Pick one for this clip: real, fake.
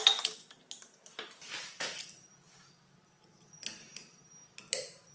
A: real